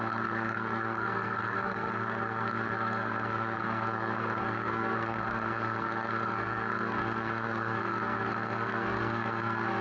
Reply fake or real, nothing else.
fake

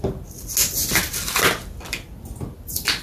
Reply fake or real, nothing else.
real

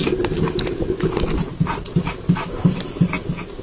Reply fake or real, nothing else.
real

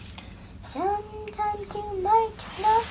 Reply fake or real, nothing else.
real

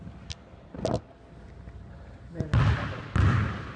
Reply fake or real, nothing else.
real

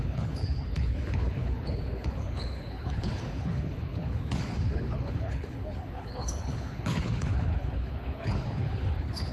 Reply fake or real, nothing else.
fake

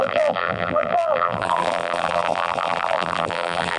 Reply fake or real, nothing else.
fake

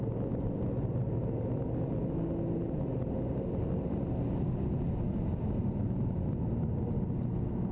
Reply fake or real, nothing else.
real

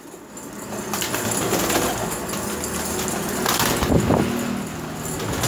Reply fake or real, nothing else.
real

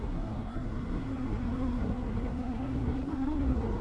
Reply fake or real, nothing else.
fake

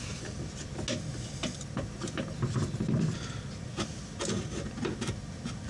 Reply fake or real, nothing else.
real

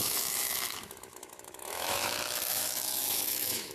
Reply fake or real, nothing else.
fake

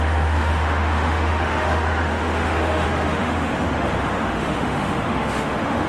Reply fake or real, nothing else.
fake